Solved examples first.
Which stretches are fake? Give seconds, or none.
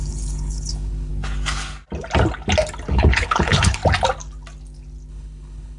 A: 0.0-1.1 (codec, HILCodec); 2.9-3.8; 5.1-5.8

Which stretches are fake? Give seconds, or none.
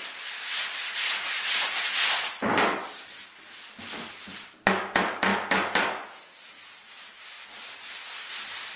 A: none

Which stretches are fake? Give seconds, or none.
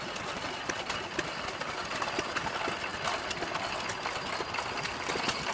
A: none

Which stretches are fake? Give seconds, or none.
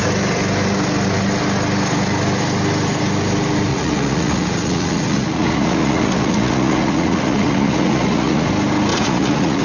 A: 3.7-8.5 (vocoder, Vocos); 8.9-9.6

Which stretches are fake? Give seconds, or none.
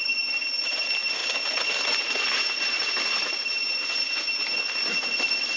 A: none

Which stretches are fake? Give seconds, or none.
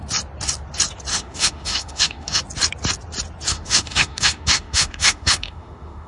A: 1.1-2.4 (autoencoder, DAC-VAE); 3.5-6.1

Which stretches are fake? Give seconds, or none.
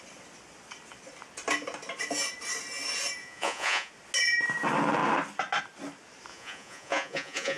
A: 3.2-3.9 (vocoder, Vocos); 6.3-7.6